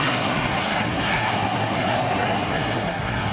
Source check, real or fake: fake